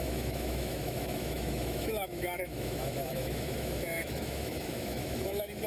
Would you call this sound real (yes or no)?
no